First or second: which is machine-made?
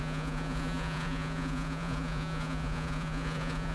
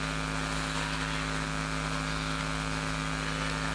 first